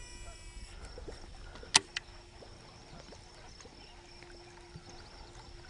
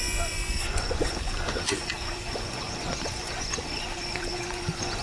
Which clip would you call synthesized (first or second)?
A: second